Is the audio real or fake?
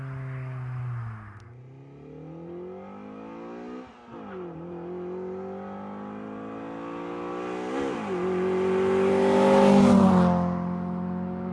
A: real